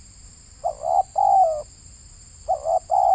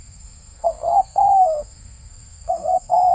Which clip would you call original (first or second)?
first